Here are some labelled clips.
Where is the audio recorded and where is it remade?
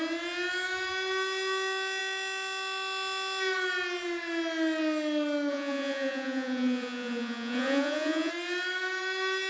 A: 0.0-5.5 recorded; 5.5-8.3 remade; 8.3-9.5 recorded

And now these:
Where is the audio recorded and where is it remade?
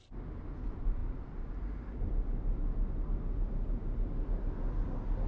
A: 0.0-5.3 recorded